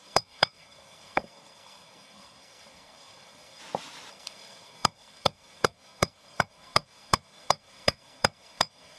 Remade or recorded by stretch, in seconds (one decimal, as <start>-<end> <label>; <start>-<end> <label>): 0.0-3.6 remade; 3.6-4.1 recorded; 4.1-9.0 remade